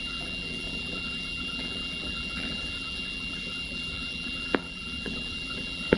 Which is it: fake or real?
fake